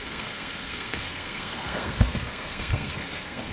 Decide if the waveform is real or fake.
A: fake